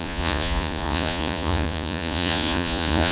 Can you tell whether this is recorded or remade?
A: remade